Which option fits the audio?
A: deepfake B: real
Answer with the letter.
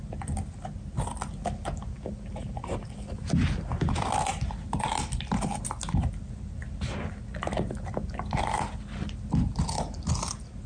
B